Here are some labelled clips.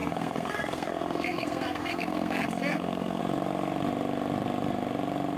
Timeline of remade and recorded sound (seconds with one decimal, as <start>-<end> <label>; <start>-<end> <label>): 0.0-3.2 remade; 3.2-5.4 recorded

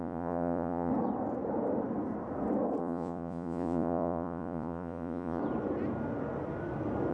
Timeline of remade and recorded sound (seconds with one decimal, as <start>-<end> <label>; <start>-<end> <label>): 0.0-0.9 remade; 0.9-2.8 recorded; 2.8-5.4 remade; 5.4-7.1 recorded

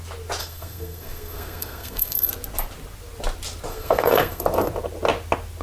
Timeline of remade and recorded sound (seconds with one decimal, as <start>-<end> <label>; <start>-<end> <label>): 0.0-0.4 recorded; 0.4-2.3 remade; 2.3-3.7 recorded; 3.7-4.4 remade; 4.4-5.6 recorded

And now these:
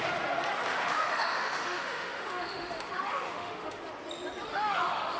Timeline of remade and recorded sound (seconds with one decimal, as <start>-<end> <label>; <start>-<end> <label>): 0.0-0.7 recorded; 0.7-3.8 remade; 3.8-4.5 recorded; 4.5-5.2 remade

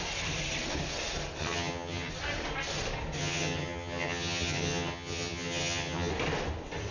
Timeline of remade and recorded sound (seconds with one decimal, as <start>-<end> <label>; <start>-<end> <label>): 0.0-1.4 recorded; 1.4-2.1 remade; 2.1-3.2 recorded; 3.2-6.1 remade; 6.1-6.9 recorded

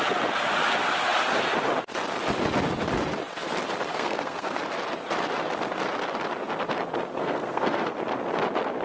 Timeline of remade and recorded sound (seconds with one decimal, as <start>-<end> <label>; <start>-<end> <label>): 0.0-3.9 recorded; 3.9-4.6 remade; 4.6-7.2 recorded; 7.2-7.9 remade; 7.9-8.8 recorded

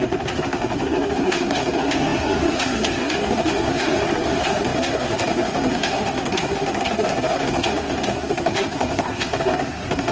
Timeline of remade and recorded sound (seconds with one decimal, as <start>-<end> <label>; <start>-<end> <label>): 0.0-10.1 remade

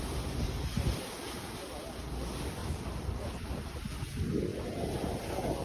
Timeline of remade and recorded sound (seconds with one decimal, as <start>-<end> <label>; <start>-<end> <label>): 0.0-0.7 recorded; 0.7-1.8 remade; 1.8-2.6 recorded; 2.6-3.7 remade; 3.7-5.6 recorded